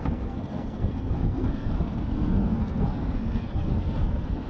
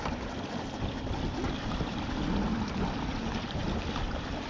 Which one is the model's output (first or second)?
first